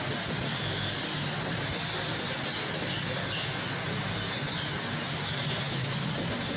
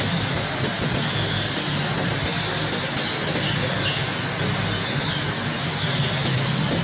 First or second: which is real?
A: second